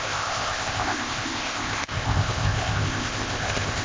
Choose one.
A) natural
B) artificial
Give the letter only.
B